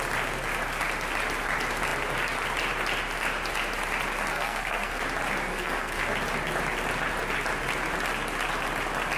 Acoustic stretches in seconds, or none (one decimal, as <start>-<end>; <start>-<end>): 0.0-4.3; 5.0-5.5; 6.0-9.2